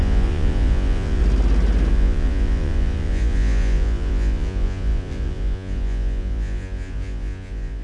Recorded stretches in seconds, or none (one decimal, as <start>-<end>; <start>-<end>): 1.2-1.9